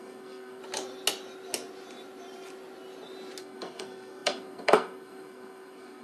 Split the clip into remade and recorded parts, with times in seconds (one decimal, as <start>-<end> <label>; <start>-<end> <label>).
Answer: 0.0-0.6 remade; 0.6-3.4 recorded; 3.4-6.0 remade